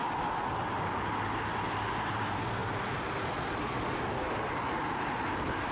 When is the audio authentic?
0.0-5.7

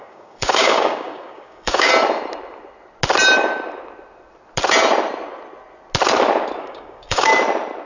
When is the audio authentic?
1.9-6.6; 7.3-7.9

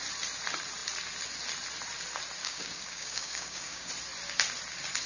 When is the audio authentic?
0.0-2.4; 3.9-5.1

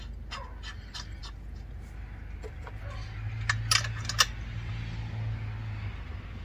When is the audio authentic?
0.0-6.4

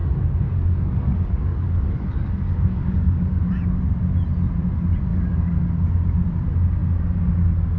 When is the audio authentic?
3.5-5.1; 5.7-7.8

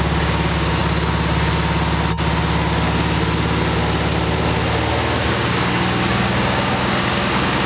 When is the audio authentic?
0.8-5.3

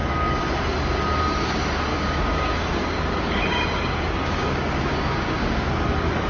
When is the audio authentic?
0.0-1.9; 5.7-6.3

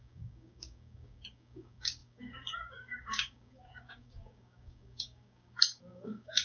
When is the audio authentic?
none